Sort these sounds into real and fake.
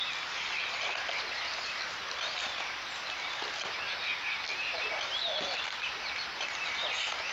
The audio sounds real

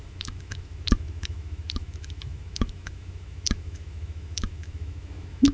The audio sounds fake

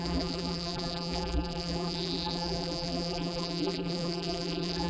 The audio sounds fake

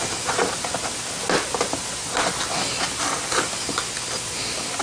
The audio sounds real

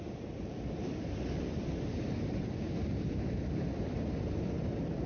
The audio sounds fake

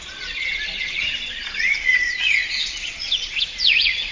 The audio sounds fake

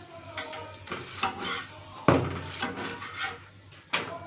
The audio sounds real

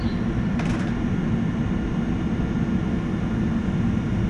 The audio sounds real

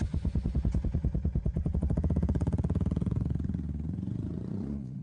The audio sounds fake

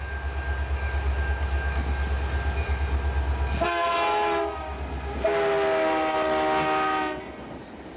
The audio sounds real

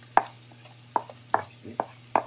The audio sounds real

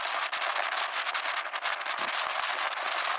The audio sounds real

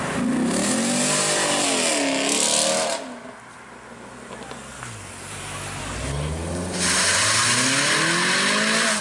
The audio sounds real